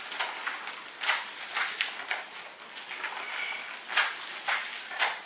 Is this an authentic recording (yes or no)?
yes